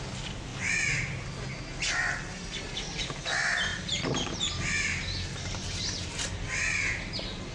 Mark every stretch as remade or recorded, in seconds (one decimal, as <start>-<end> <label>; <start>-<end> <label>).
0.0-3.7 recorded; 3.7-4.4 remade; 4.4-7.5 recorded